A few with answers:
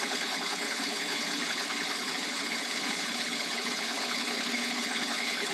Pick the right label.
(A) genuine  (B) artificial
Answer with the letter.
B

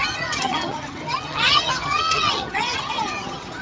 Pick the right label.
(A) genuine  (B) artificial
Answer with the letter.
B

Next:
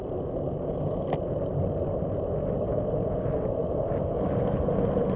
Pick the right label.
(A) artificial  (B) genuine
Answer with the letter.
B